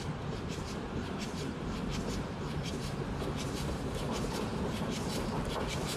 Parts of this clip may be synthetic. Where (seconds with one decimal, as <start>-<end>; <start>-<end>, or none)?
0.0-1.9; 3.2-6.0